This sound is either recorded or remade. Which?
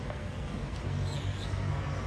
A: remade